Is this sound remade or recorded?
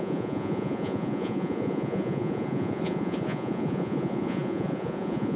remade